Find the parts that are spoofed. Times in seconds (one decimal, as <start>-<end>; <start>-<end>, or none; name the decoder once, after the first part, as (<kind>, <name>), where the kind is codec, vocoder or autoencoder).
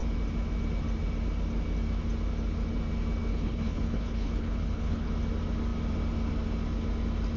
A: 3.3-5.1 (codec, HILCodec)